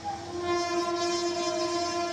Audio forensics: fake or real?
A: real